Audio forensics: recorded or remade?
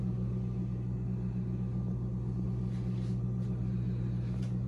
recorded